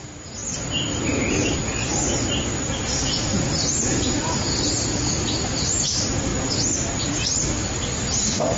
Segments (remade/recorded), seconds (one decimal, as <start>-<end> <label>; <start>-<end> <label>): 0.0-3.3 recorded; 3.3-4.6 remade; 4.6-8.6 recorded